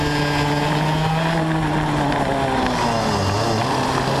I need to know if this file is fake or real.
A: real